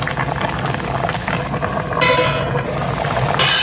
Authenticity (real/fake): real